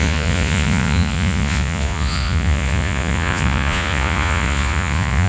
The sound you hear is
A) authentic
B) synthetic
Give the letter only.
B